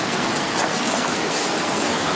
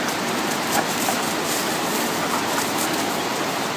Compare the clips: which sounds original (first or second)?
second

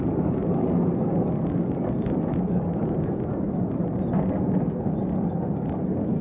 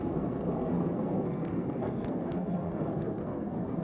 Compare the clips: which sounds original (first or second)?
first